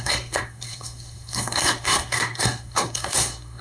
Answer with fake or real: fake